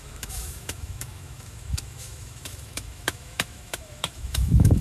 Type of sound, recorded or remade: remade